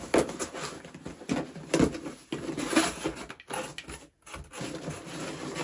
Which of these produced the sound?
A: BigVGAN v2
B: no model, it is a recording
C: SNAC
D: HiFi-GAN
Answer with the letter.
B